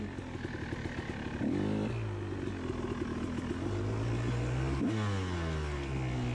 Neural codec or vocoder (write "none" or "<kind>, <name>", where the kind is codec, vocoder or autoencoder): none